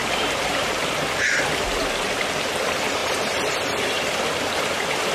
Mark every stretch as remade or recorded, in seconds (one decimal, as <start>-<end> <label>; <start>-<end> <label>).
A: 0.0-0.8 remade; 0.8-3.0 recorded; 3.0-5.1 remade